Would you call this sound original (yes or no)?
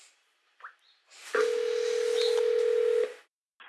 yes